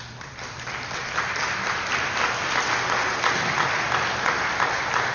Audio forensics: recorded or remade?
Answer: recorded